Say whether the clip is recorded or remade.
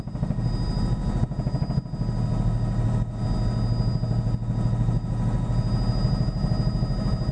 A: recorded